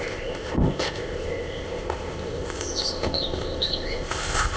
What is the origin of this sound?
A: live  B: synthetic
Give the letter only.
B